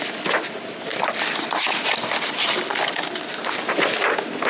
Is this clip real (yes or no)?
yes